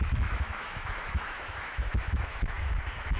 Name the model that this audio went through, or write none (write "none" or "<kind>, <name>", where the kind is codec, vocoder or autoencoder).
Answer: autoencoder, DAC-VAE